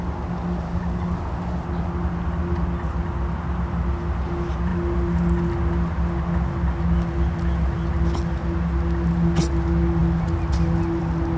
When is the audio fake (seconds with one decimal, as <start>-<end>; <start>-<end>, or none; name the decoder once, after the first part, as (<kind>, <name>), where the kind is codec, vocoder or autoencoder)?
none